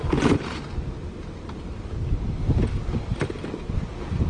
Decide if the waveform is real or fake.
real